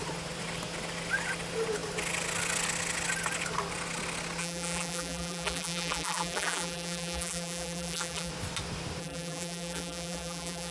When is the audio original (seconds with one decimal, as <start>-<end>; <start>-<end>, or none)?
0.0-4.4; 8.3-9.0